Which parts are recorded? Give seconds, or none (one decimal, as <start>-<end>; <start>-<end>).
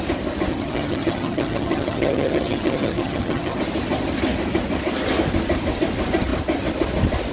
0.0-0.5; 3.6-7.3